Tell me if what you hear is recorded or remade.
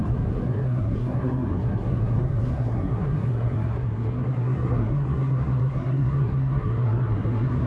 remade